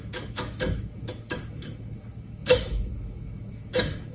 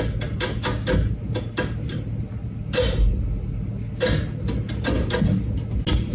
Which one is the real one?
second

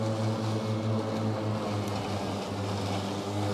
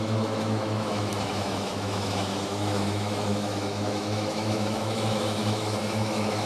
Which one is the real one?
first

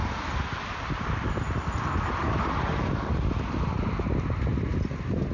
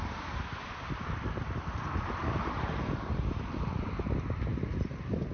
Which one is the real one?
first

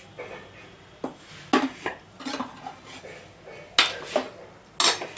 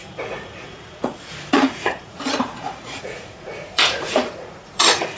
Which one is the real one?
first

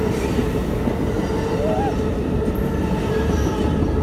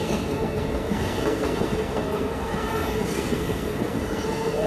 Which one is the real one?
first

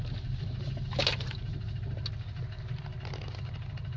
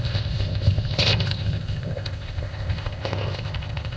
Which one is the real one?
first